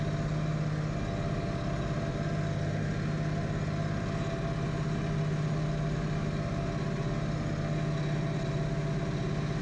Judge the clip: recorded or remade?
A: recorded